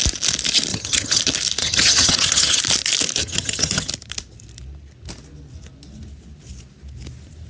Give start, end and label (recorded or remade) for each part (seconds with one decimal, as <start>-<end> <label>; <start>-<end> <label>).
0.0-0.7 recorded; 0.7-1.2 remade; 1.2-1.6 recorded; 1.6-2.6 remade; 2.6-3.2 recorded; 3.2-3.9 remade; 3.9-7.5 recorded